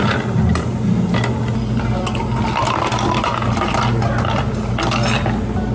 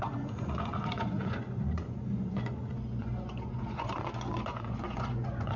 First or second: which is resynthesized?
second